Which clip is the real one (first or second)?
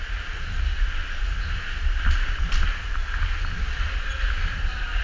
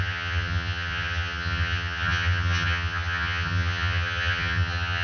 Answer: first